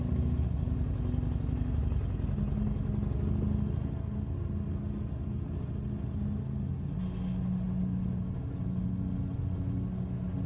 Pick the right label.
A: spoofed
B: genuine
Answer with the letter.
B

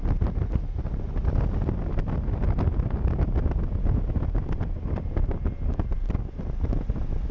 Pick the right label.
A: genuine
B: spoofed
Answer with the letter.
A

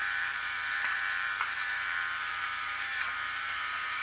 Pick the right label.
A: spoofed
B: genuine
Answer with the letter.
A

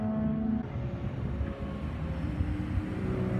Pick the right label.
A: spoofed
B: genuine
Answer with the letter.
B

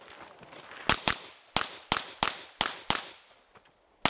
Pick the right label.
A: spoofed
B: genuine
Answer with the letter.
B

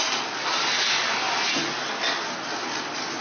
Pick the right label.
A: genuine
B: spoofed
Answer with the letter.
A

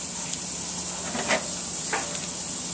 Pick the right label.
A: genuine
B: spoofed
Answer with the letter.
A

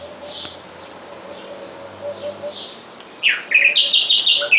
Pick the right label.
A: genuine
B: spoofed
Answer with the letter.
A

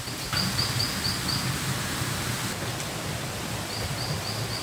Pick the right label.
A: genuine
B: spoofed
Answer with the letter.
A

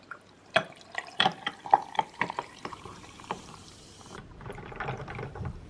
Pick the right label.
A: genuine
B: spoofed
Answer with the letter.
B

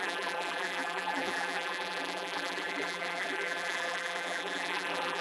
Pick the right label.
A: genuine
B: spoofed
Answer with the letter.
B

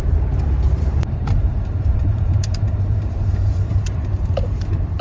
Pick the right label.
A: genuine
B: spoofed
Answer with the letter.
B